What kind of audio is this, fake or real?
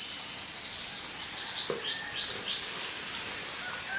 real